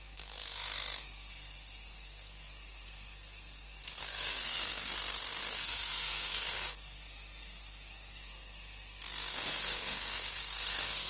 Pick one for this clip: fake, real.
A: fake